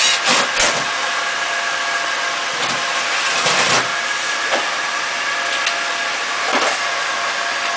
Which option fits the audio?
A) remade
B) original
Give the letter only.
B